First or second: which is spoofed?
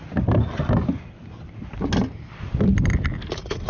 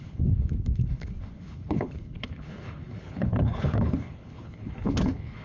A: second